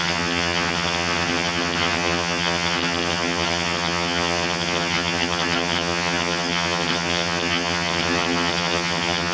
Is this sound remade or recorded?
remade